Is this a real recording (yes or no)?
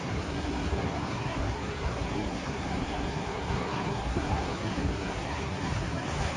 no